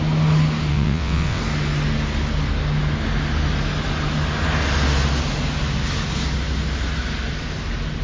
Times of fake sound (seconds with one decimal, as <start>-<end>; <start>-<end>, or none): 0.7-1.4